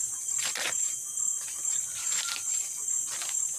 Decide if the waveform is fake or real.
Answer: real